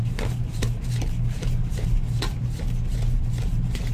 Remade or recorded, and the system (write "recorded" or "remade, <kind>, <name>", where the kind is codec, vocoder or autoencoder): remade, vocoder, BigVGAN v2